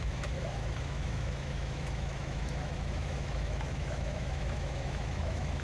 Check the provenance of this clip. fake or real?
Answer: fake